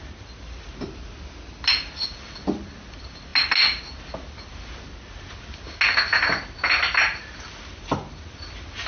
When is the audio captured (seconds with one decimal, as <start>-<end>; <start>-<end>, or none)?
0.0-8.9